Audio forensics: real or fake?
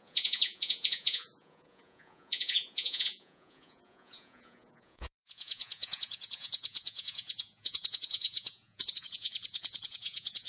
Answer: fake